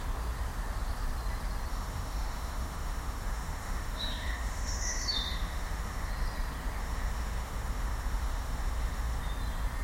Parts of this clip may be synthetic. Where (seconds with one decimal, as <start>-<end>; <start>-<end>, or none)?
1.7-6.1; 6.8-9.2